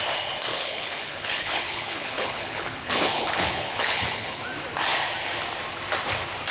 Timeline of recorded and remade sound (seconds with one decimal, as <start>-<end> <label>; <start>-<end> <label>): 0.0-0.5 recorded; 0.5-4.4 remade; 4.4-6.5 recorded